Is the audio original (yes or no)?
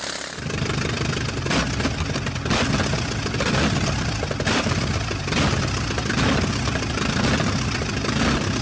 yes